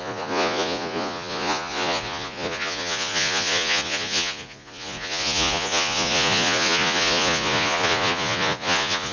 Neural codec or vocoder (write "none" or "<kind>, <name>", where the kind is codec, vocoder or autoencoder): vocoder, Vocos